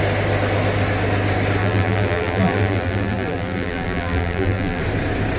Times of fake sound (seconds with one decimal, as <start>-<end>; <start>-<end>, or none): 1.6-4.8